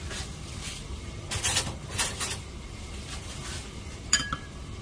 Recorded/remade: recorded